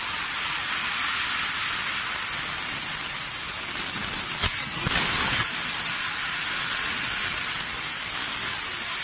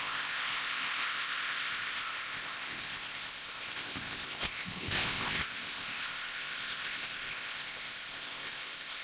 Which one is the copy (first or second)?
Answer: second